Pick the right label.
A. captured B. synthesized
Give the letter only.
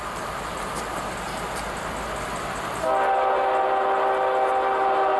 A